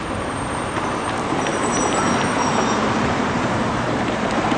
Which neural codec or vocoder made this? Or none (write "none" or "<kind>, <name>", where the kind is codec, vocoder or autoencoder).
vocoder, BigVGAN v2